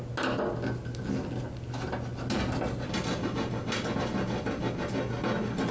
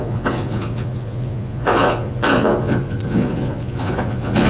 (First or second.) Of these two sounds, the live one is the first